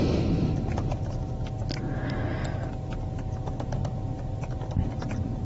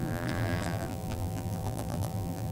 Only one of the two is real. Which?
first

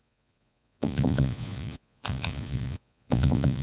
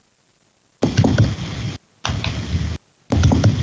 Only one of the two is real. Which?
second